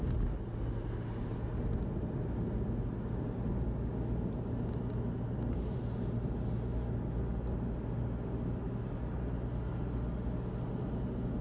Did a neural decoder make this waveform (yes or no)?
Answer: no